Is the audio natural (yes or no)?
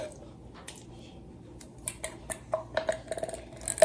yes